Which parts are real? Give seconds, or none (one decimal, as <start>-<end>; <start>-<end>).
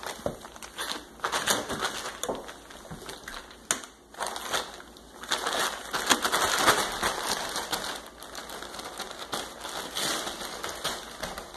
0.0-11.6